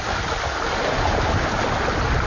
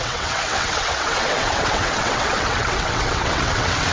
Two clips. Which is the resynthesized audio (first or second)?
second